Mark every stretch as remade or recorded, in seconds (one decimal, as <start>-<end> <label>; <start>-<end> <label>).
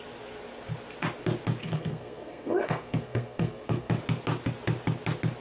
0.0-1.6 recorded; 1.6-3.9 remade; 3.9-5.4 recorded